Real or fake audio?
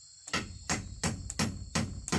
real